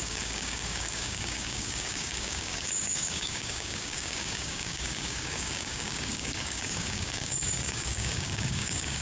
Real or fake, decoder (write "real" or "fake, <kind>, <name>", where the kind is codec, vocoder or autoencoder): fake, codec, DAC